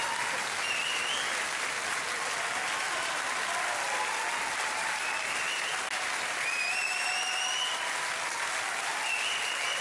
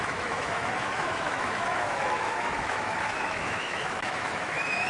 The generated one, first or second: second